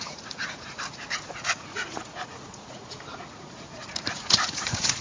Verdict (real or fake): fake